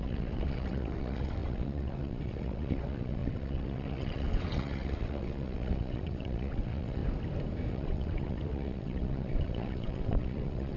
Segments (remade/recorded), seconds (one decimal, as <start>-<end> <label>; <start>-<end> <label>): 0.0-7.0 remade; 7.0-7.7 recorded; 7.7-10.8 remade

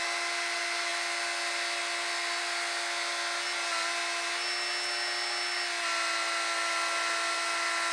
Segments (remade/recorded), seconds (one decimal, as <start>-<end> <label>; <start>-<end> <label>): 0.0-7.9 recorded

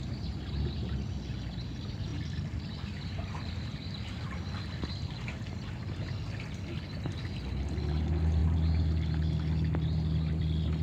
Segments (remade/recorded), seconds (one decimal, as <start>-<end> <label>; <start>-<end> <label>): 0.0-10.8 recorded

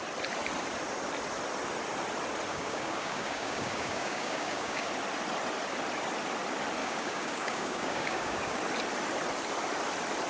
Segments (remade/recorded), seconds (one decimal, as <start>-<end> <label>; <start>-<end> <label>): 0.0-2.5 recorded; 2.5-4.9 remade; 4.9-6.8 recorded; 6.8-8.6 remade; 8.6-10.3 recorded